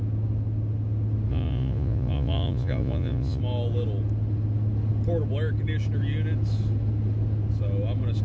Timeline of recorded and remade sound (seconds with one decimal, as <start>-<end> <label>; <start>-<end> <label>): 0.0-1.3 recorded; 1.3-3.4 remade; 3.4-8.2 recorded